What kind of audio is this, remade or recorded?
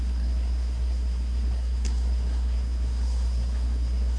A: remade